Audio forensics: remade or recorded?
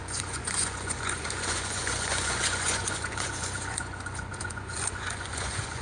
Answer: remade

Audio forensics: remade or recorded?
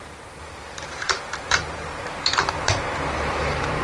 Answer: remade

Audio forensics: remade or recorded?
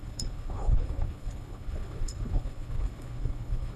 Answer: remade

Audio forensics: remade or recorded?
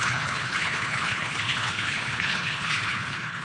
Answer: remade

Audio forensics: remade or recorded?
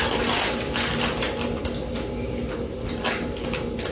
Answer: recorded